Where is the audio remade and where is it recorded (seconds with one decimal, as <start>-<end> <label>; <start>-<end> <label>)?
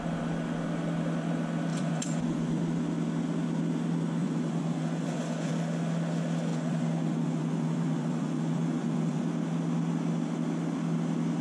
0.0-1.7 recorded; 1.7-2.6 remade; 2.6-4.2 recorded; 4.2-5.5 remade; 5.5-6.5 recorded; 6.5-9.2 remade; 9.2-11.4 recorded